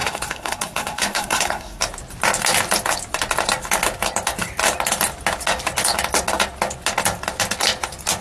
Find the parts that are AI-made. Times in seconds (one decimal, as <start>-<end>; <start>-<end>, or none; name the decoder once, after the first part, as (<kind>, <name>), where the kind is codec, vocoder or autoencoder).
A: 0.0-1.8 (codec, SNAC)